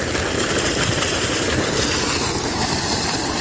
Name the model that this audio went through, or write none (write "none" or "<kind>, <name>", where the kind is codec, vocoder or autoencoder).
none